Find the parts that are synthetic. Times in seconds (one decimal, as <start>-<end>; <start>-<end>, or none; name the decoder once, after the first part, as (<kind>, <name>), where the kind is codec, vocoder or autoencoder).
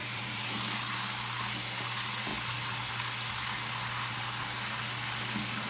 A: 0.0-0.6 (vocoder, BigVGAN v2)